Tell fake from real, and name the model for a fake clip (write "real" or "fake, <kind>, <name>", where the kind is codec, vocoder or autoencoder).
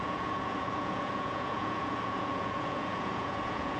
fake, vocoder, Vocos